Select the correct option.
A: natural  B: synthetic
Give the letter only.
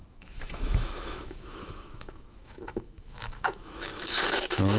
B